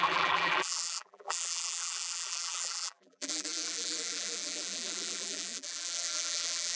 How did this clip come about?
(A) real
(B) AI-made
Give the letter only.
B